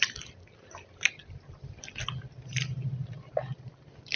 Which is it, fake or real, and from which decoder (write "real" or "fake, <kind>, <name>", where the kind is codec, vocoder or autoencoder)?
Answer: fake, vocoder, BigVGAN v2